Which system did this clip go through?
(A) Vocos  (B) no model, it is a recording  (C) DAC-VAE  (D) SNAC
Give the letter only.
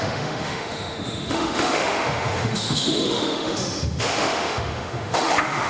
C